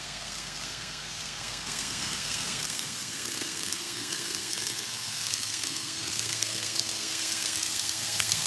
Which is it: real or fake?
fake